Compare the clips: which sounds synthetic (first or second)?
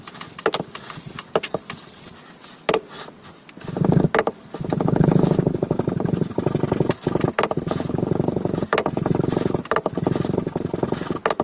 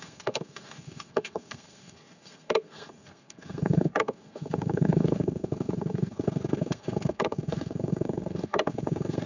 second